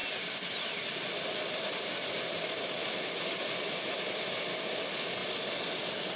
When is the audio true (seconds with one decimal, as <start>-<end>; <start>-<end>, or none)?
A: 0.0-6.2